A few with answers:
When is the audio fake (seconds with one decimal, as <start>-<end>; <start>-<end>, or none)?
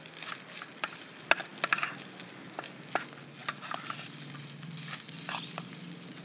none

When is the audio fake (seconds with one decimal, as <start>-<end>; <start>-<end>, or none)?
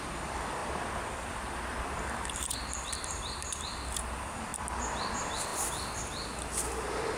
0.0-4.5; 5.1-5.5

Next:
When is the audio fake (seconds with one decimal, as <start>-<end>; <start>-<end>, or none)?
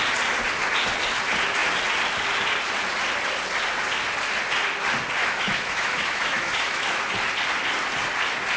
5.2-7.0